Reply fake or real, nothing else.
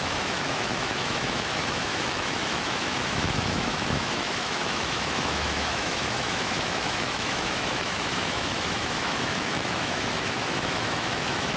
fake